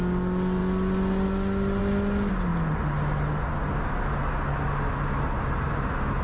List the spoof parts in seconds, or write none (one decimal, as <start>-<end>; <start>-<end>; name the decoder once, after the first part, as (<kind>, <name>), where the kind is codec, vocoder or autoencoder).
none